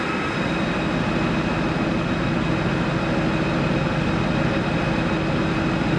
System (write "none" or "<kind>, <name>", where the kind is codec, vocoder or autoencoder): none